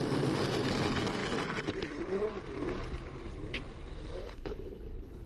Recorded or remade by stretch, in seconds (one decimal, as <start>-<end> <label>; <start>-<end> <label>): 0.0-4.2 recorded; 4.2-5.3 remade